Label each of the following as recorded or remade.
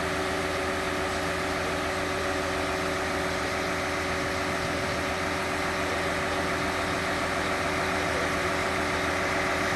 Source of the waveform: recorded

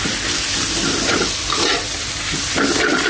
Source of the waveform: recorded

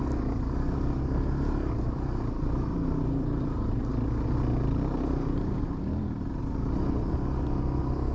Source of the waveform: recorded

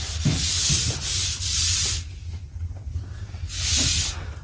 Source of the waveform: recorded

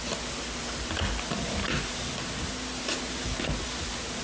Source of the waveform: recorded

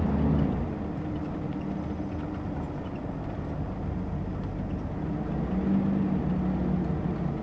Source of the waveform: recorded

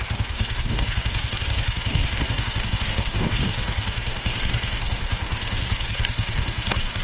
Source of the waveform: remade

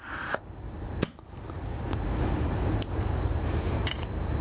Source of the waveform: recorded